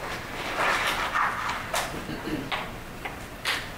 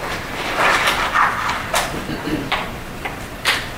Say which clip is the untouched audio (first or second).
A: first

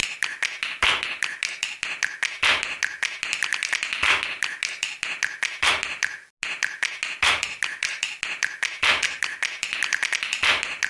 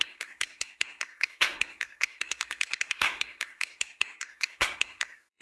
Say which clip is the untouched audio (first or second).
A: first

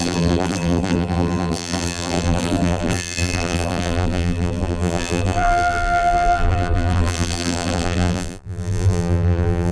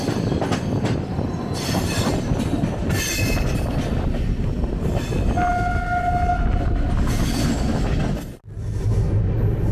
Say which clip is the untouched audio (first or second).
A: second